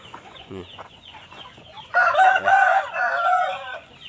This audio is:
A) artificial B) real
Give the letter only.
A